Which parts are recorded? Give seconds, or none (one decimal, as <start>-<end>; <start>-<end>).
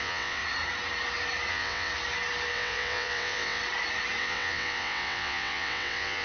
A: 0.4-1.5; 1.9-2.5; 3.6-4.2